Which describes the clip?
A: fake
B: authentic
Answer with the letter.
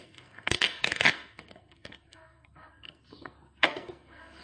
A